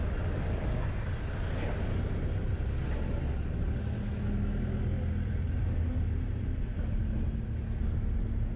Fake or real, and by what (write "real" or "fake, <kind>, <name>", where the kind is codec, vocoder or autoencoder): real